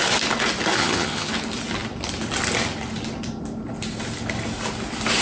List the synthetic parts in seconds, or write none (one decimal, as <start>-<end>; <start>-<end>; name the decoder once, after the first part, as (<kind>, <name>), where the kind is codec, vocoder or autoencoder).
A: 0.8-1.3 (vocoder, HiFi-GAN)